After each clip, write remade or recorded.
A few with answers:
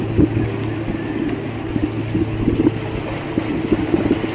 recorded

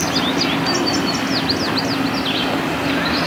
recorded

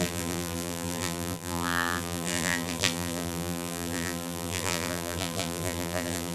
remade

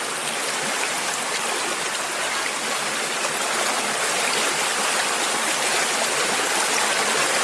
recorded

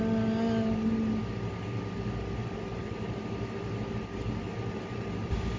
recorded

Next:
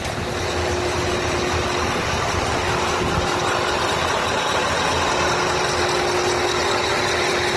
recorded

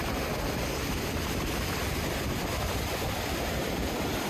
remade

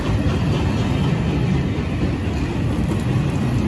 recorded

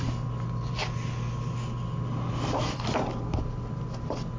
recorded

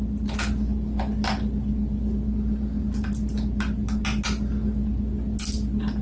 recorded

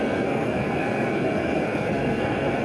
remade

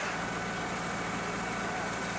recorded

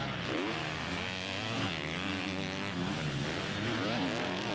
recorded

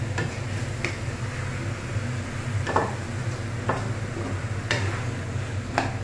recorded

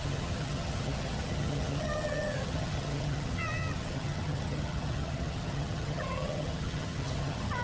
remade